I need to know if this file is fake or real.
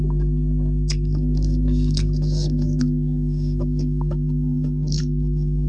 fake